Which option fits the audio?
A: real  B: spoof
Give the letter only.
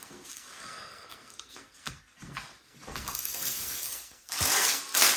B